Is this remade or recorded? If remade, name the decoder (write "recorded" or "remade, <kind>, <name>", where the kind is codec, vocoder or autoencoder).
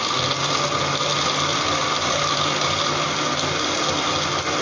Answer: recorded